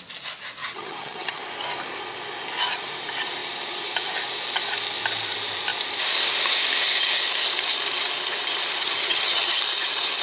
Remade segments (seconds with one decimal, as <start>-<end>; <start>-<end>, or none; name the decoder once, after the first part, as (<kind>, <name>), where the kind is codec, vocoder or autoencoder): 0.6-1.4 (vocoder, HiFi-GAN); 8.8-9.6